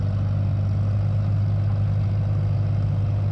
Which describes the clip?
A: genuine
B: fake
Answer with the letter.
A